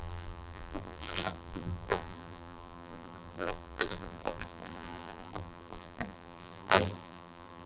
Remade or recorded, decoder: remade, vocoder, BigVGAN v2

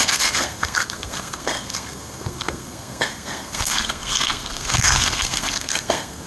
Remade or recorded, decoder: remade, codec, SNAC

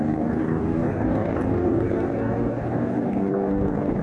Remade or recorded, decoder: remade, codec, DAC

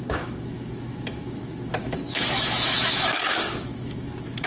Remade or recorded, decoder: remade, autoencoder, DAC-VAE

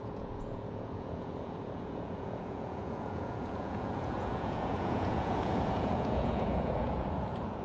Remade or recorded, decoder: remade, vocoder, Vocos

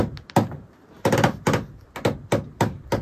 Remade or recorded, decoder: recorded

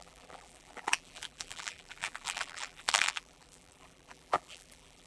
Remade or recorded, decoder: remade, vocoder, BigVGAN v2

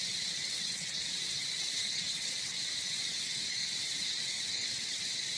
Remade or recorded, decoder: remade, vocoder, WaveNeXt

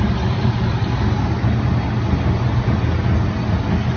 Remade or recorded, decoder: recorded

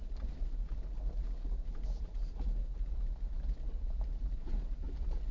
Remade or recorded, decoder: recorded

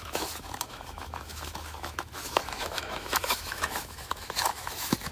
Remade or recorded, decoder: remade, autoencoder, DAC-VAE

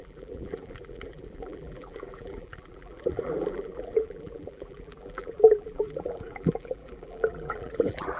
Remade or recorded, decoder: remade, vocoder, BigVGAN v2